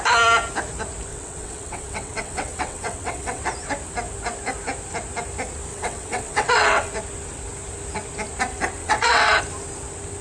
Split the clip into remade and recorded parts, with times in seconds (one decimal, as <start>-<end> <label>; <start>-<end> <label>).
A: 0.0-1.1 recorded; 1.1-3.4 remade; 3.4-5.7 recorded; 5.7-6.9 remade; 6.9-8.8 recorded; 8.8-9.4 remade; 9.4-10.2 recorded

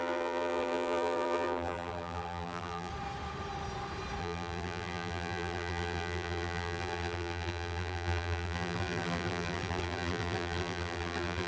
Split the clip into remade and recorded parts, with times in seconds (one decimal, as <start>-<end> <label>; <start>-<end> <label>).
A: 0.0-2.9 remade; 2.9-4.2 recorded; 4.2-11.5 remade

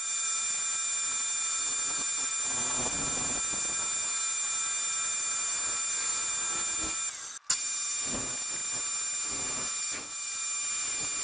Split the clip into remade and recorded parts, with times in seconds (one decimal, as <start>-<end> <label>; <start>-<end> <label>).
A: 0.0-11.2 recorded

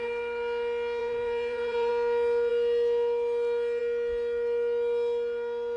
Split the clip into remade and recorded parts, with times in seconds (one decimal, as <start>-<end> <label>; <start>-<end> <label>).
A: 0.0-1.0 recorded; 1.0-1.9 remade; 1.9-5.8 recorded

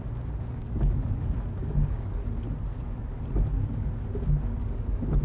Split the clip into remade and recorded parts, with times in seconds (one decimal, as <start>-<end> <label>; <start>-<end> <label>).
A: 0.0-0.6 recorded; 0.6-1.1 remade; 1.1-1.6 recorded; 1.6-2.2 remade; 2.2-2.7 recorded; 2.7-3.9 remade; 3.9-4.6 recorded; 4.6-5.2 remade

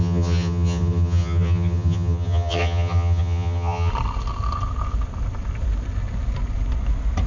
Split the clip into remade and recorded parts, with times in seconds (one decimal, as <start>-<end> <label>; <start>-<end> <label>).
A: 0.0-3.9 remade; 3.9-7.3 recorded